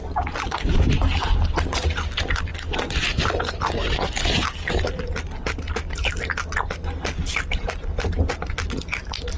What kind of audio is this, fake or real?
real